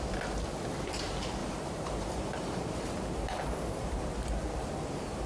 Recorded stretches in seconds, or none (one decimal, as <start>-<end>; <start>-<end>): 0.0-1.4; 4.0-5.3